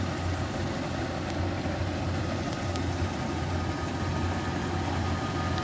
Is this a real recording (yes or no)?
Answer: yes